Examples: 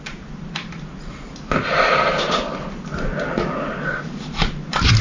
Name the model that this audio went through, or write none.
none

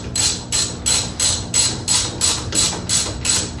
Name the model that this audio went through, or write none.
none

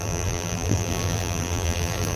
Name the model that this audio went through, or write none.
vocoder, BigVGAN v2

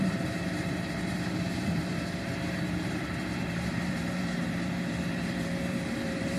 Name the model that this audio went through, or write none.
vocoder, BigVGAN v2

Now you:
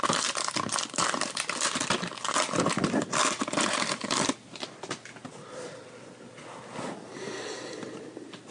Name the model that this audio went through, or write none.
none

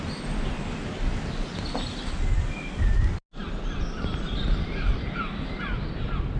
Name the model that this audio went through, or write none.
none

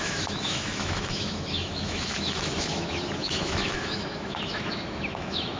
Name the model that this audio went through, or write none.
autoencoder, DAC-VAE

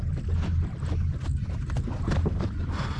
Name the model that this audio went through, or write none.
none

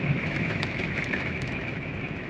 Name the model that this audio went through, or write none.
autoencoder, DAC-VAE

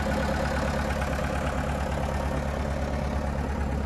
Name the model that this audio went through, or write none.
none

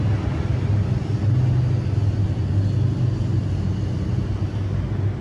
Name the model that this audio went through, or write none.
none